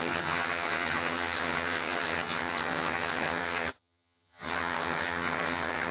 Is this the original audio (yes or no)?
no